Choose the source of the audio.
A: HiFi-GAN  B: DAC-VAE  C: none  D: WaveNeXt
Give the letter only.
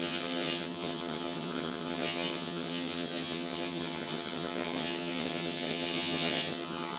A